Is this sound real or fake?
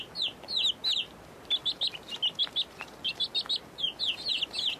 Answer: real